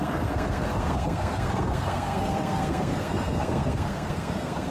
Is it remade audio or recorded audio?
remade